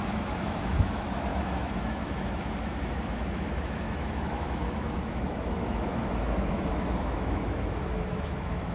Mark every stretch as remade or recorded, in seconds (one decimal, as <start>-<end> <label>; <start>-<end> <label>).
0.0-8.7 remade